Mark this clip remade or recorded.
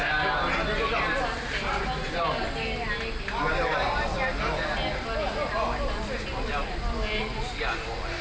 recorded